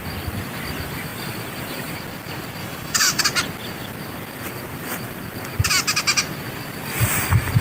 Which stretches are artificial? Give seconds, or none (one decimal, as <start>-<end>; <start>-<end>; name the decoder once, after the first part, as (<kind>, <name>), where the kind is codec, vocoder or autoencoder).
2.6-3.2 (autoencoder, DAC-VAE)